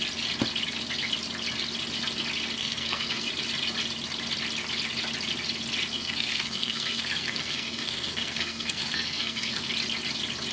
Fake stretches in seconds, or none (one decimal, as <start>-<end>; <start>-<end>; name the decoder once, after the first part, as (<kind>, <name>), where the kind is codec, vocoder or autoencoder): 2.6-3.3 (codec, SNAC); 5.9-9.7